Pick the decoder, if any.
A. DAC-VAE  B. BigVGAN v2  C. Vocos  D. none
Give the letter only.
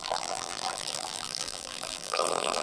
B